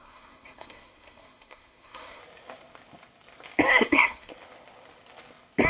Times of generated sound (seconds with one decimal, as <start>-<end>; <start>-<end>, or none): 0.0-2.2; 3.7-4.3